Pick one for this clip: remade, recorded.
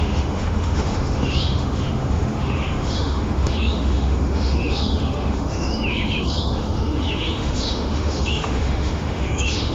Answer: remade